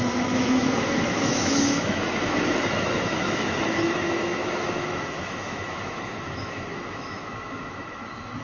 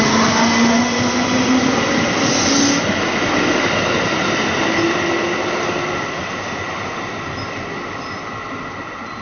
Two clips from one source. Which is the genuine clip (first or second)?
second